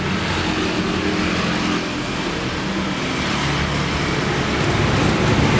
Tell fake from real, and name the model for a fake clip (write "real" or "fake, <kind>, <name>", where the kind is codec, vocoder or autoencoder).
real